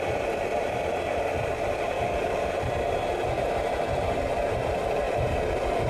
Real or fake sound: fake